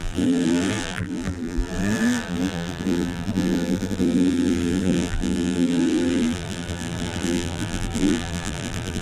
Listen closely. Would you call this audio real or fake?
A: fake